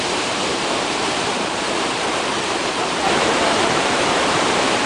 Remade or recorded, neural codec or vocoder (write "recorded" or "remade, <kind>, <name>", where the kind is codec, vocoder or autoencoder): remade, vocoder, BigVGAN v2